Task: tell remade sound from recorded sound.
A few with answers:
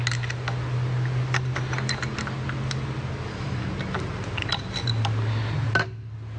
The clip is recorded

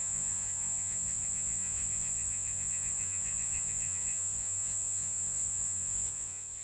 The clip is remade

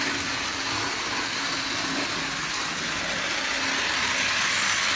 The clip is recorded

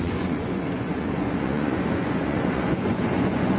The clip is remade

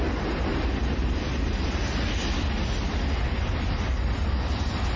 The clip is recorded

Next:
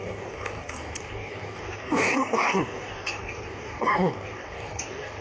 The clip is remade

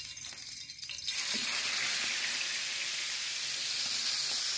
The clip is recorded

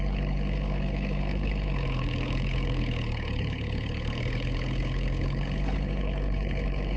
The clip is remade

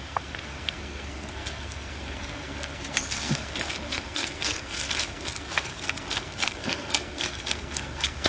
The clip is remade